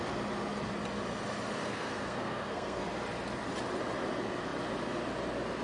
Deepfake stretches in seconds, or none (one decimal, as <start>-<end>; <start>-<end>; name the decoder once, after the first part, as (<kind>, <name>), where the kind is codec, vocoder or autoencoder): 1.6-2.8 (codec, SNAC)